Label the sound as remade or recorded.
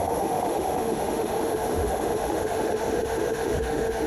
remade